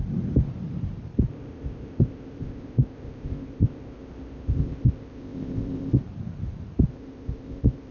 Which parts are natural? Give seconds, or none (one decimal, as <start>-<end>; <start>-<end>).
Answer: 0.0-1.3; 6.0-6.9